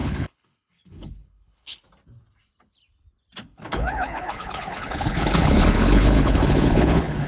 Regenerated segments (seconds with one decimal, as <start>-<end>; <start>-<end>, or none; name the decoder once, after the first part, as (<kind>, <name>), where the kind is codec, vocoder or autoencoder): 0.0-1.8 (codec, HILCodec); 3.4-7.3